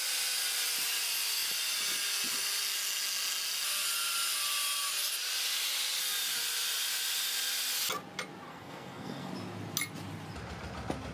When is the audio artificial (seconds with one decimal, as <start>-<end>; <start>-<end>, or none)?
8.5-9.3